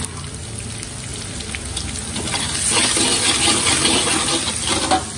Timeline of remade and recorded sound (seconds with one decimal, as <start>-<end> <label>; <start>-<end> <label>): 0.0-5.2 recorded